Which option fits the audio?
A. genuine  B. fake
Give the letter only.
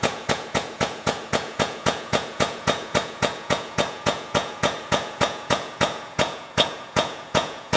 B